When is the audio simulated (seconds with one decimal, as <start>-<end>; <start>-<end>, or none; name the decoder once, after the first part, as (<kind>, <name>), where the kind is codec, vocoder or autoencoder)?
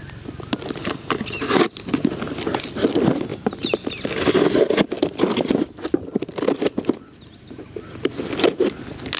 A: none